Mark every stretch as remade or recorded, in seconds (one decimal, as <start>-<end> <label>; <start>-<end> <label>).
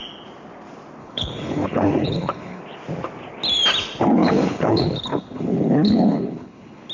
0.0-1.0 recorded; 1.0-2.6 remade; 2.6-4.2 recorded; 4.2-6.9 remade